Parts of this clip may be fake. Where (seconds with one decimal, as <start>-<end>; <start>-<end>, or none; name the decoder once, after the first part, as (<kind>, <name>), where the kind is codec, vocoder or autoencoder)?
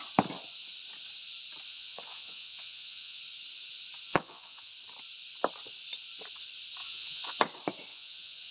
1.7-3.2 (vocoder, Vocos); 4.1-4.7; 6.8-7.4; 7.9-8.5